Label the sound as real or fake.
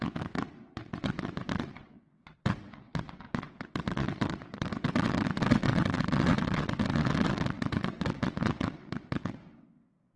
fake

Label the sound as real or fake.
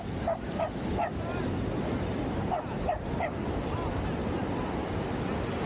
real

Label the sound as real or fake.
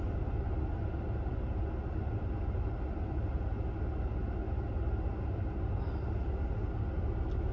real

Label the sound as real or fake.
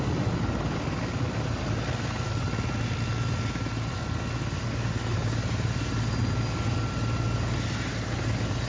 real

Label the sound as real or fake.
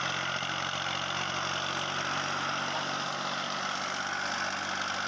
real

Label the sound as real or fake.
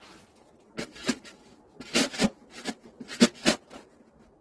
real